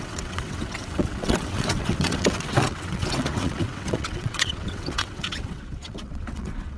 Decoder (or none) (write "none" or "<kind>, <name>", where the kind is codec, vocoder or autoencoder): vocoder, WaveNeXt